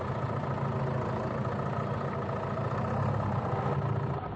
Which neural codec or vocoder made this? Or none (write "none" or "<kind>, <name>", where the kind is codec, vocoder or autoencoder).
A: none